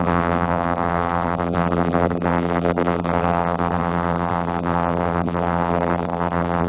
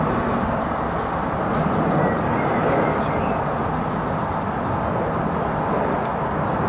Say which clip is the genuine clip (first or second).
second